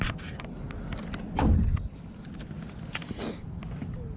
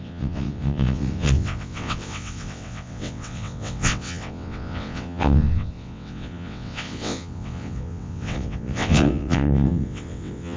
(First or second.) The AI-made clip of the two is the second